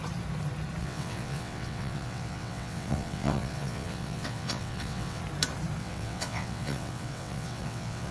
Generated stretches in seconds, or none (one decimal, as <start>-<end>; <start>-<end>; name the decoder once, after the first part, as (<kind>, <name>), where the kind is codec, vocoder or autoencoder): 0.8-5.2 (vocoder, WaveNeXt); 5.8-8.1